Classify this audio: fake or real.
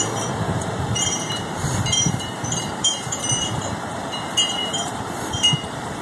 fake